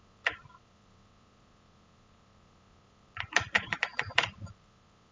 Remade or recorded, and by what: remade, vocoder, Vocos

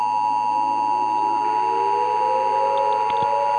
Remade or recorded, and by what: recorded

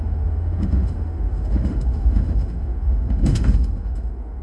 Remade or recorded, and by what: remade, autoencoder, DAC-VAE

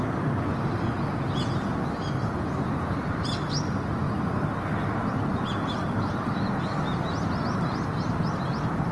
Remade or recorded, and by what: recorded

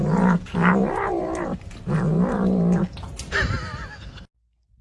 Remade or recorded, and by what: recorded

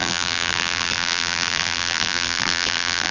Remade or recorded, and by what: remade, vocoder, BigVGAN v2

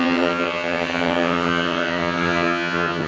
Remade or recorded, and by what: remade, vocoder, HiFi-GAN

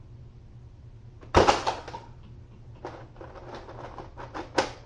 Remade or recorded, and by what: recorded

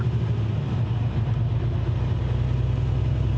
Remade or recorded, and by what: recorded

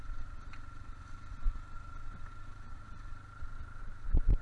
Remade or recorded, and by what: recorded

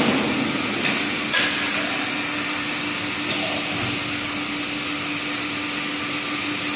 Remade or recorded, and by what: recorded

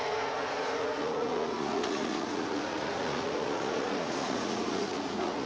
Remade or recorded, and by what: remade, vocoder, Vocos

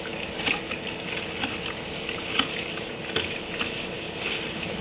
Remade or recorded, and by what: recorded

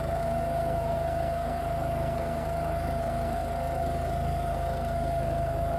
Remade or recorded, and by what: remade, codec, SNAC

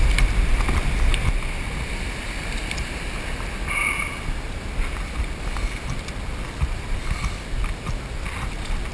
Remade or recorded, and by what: recorded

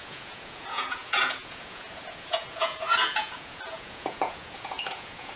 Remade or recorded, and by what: remade, vocoder, Vocos